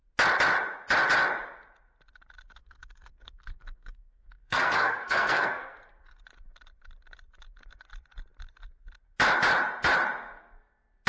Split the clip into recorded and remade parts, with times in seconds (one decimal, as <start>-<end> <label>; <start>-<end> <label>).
0.0-2.6 recorded; 2.6-6.2 remade; 6.2-11.1 recorded